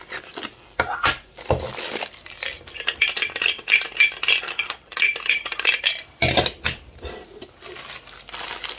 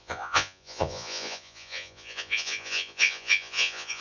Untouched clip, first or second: first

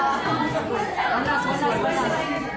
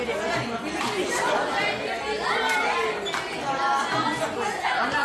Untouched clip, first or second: second